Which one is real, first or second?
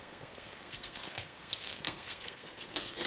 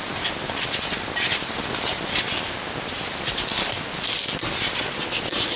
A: second